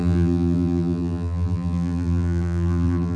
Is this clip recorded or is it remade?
remade